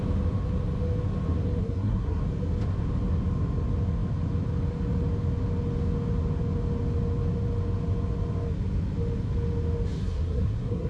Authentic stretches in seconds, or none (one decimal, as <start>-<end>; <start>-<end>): 0.0-1.6; 2.2-10.0